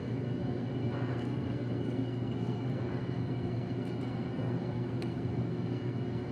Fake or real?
fake